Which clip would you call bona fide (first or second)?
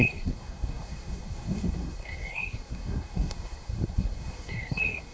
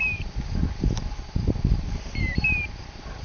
second